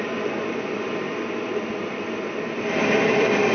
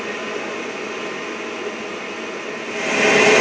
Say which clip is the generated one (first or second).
first